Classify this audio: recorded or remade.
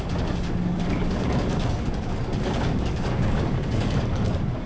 remade